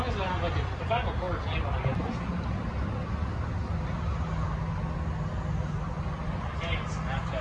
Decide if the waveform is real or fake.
real